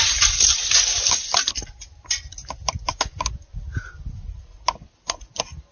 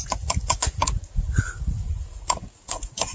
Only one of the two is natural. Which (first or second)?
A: first